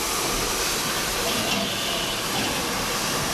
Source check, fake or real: real